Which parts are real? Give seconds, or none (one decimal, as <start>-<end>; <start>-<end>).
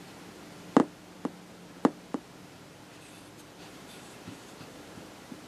0.8-3.6